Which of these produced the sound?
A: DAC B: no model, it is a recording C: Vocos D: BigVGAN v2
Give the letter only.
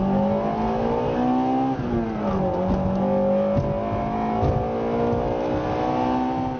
B